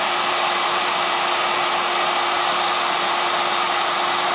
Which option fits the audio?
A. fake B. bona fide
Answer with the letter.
B